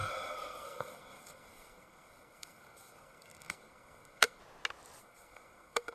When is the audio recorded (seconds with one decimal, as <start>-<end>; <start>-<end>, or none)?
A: 4.4-5.0